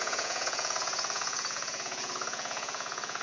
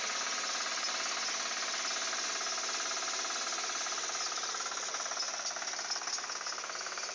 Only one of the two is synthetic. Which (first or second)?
first